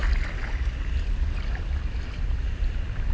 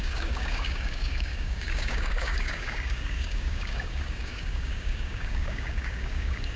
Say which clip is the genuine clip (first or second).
first